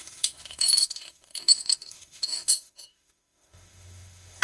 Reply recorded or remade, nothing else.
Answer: remade